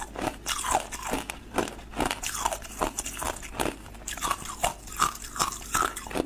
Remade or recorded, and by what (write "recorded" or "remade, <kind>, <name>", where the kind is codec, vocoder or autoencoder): recorded